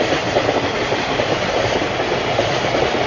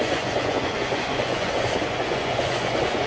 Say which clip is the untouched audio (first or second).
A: first